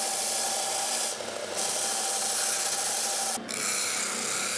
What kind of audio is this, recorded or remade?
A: recorded